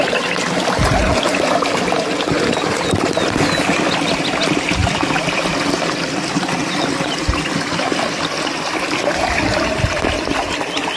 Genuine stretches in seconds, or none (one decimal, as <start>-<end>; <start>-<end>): 0.0-11.0

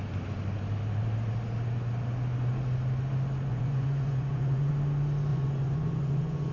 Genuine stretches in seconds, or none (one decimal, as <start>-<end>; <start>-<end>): 0.0-3.5; 4.7-5.3

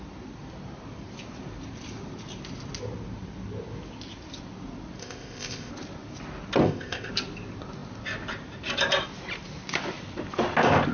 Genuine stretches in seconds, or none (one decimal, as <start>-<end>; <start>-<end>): 0.0-5.0; 5.7-6.6; 7.1-10.9

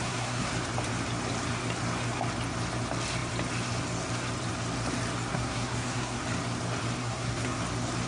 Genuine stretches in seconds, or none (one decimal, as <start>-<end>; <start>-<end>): 0.5-5.3; 6.2-7.0; 7.6-8.1

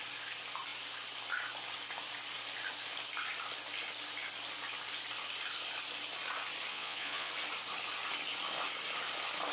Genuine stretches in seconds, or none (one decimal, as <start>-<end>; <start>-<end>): 0.0-6.7; 7.3-9.5

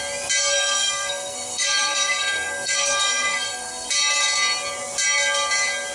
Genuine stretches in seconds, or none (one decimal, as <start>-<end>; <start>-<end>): 0.0-0.4; 3.9-5.9